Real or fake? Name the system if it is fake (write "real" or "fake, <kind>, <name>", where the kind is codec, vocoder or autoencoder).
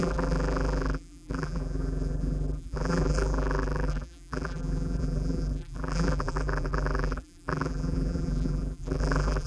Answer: fake, vocoder, BigVGAN v2